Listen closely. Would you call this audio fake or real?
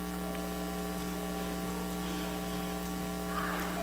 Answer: real